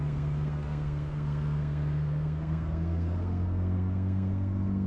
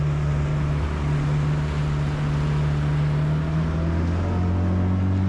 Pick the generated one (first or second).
first